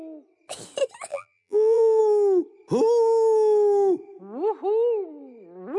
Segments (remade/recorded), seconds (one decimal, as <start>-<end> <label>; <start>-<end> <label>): 0.0-1.1 recorded; 1.1-2.0 remade; 2.0-5.8 recorded

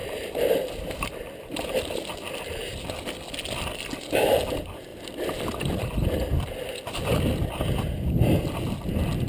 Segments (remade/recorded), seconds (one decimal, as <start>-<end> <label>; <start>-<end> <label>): 0.0-1.8 remade; 1.8-9.3 recorded

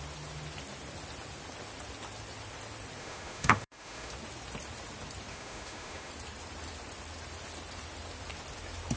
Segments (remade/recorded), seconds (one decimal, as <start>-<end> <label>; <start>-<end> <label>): 0.0-3.0 recorded; 3.0-4.1 remade; 4.1-5.3 recorded; 5.3-6.1 remade; 6.1-9.0 recorded